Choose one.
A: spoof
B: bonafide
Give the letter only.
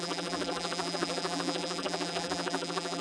A